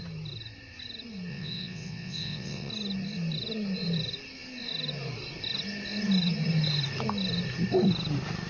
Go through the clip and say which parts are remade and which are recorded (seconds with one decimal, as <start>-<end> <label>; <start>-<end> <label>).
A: 0.0-1.3 recorded; 1.3-2.7 remade; 2.7-8.5 recorded